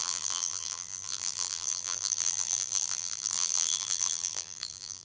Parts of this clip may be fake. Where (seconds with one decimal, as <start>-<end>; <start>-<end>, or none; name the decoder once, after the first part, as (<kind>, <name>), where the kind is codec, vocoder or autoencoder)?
0.0-5.0 (vocoder, BigVGAN v2)